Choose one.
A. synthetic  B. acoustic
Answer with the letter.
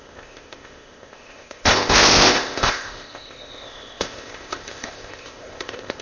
A